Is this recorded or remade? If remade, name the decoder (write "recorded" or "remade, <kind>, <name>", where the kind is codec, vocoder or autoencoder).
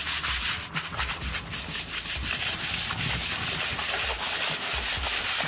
recorded